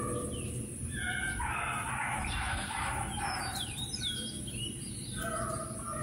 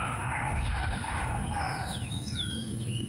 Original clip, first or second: first